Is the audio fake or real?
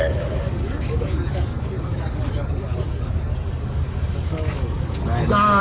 fake